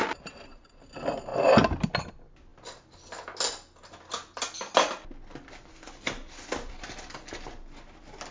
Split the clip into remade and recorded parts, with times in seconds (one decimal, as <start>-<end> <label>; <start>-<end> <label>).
0.0-8.3 recorded